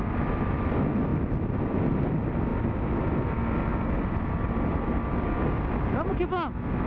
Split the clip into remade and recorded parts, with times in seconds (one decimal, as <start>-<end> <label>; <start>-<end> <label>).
0.0-6.9 recorded